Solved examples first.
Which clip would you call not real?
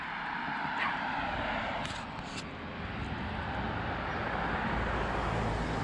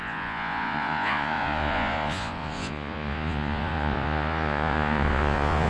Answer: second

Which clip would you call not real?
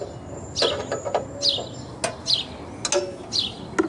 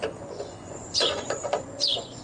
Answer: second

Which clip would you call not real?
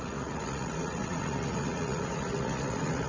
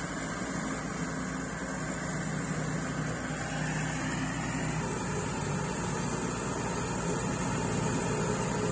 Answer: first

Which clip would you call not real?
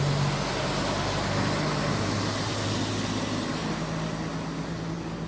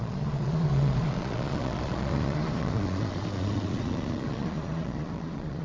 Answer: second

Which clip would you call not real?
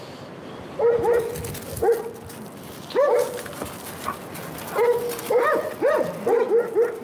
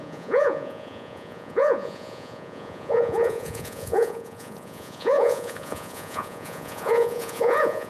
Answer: second